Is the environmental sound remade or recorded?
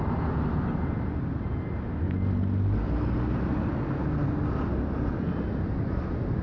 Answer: recorded